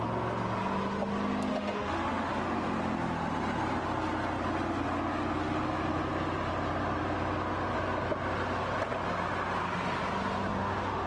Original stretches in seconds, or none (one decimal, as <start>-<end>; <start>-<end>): 0.0-1.5; 2.3-10.5